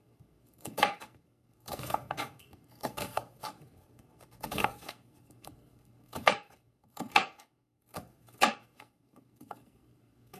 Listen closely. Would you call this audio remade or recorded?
remade